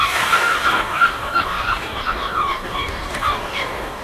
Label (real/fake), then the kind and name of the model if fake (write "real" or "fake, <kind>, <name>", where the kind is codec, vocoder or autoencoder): fake, codec, DAC